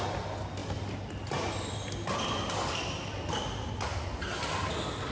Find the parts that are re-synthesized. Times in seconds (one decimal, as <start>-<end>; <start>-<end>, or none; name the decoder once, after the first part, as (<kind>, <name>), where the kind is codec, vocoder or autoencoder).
none